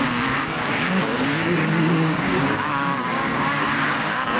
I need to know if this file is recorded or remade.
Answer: remade